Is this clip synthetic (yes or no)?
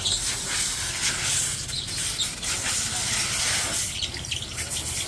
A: no